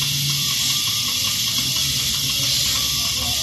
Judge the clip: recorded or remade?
recorded